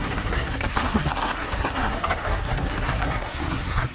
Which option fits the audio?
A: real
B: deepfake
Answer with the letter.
B